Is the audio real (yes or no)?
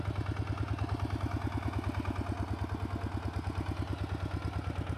yes